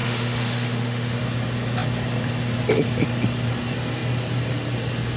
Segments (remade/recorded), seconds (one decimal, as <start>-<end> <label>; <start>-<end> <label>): 0.0-1.2 remade; 1.2-5.2 recorded